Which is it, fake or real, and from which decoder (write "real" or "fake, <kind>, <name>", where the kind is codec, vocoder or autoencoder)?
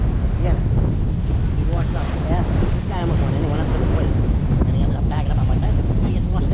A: real